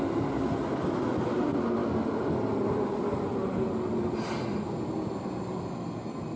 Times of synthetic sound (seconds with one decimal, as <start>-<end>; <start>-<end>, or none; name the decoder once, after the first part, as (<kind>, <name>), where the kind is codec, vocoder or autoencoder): none